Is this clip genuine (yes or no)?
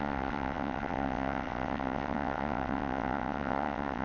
no